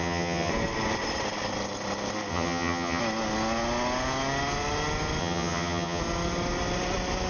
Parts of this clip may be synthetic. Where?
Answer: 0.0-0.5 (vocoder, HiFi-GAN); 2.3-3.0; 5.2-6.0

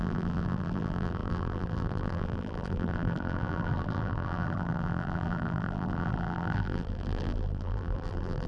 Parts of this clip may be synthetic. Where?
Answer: 0.0-8.5 (vocoder, BigVGAN v2)

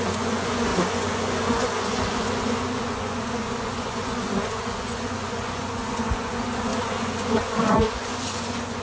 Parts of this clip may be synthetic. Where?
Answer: 0.0-8.8 (vocoder, Vocos)

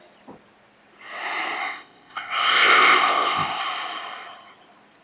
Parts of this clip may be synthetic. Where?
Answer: 1.6-3.6 (codec, ZipCodec)

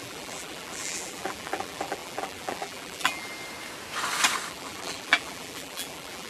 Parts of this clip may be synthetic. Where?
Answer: 0.0-3.3 (vocoder, BigVGAN v2); 4.5-6.3

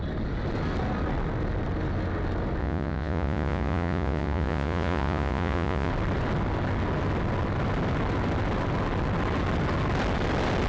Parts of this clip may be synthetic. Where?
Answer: 2.6-5.9 (vocoder, Vocos)

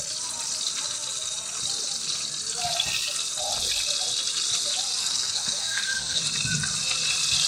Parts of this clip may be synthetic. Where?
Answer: 5.0-6.2 (codec, SNAC)

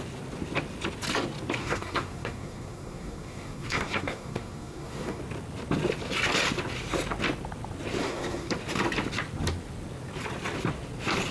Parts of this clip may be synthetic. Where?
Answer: 1.6-5.2 (codec, SNAC); 8.0-8.5